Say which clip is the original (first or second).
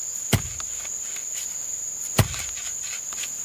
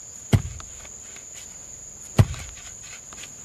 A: first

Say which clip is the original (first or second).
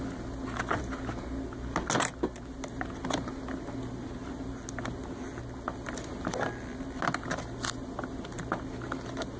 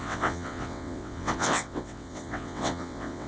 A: first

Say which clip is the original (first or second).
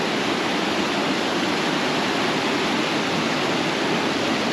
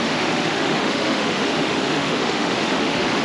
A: first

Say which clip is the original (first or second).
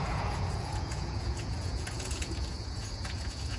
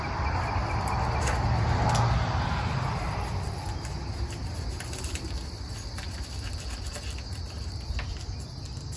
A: second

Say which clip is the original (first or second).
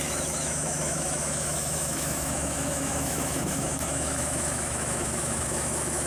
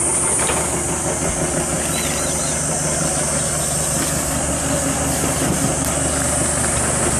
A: second